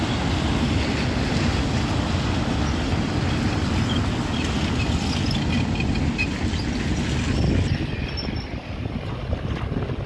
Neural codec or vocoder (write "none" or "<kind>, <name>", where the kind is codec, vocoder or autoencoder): none